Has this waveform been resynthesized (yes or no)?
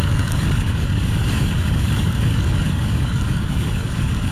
yes